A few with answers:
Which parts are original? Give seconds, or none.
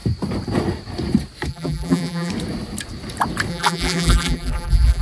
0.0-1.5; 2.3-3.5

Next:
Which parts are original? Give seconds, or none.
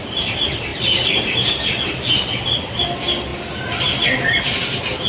3.3-4.4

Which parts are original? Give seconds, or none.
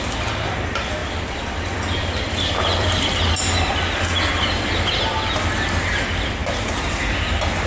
0.0-1.0; 3.3-7.7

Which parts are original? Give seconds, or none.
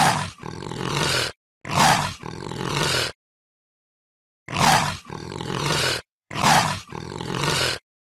0.0-5.2; 7.4-8.2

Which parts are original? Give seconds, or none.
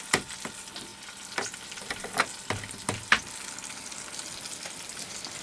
0.0-5.4